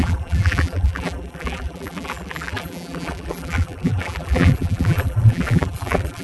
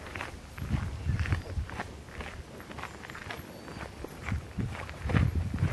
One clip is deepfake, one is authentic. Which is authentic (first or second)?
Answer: second